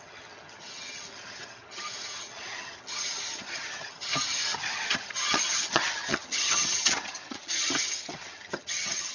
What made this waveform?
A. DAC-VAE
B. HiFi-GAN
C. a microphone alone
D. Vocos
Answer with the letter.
B